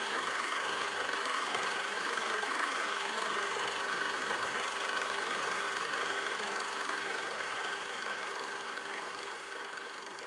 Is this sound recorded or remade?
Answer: remade